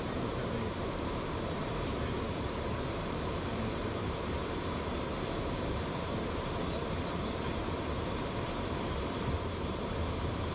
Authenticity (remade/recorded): remade